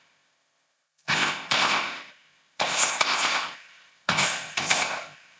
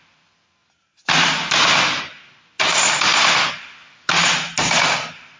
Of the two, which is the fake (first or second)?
first